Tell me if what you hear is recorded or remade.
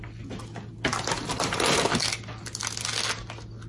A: recorded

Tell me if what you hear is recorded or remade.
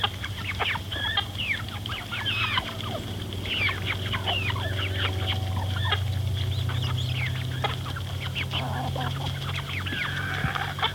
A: recorded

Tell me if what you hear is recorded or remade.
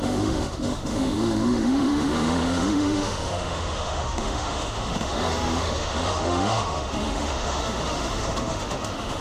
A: remade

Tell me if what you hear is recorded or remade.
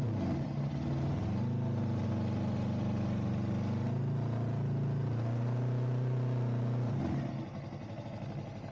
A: recorded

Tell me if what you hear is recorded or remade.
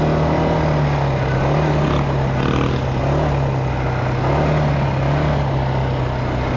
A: recorded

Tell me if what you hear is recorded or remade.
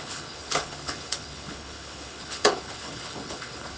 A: remade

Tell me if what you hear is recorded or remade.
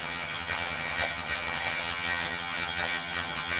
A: remade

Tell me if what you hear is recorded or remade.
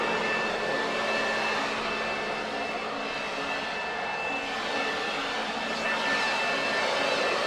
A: recorded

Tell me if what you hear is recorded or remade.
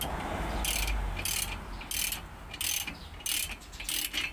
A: recorded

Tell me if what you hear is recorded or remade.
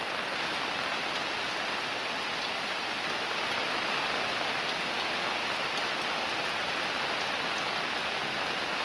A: recorded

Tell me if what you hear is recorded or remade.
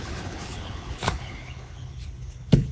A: remade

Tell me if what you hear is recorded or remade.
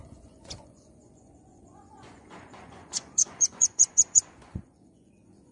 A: remade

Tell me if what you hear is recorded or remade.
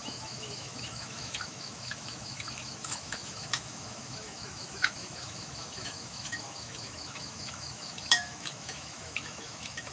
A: remade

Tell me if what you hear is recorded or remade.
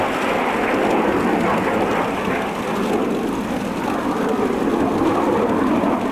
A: recorded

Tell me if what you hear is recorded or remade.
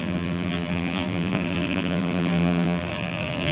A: remade